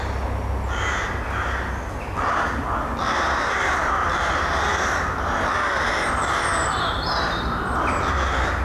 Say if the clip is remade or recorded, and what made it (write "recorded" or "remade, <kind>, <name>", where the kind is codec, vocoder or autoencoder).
recorded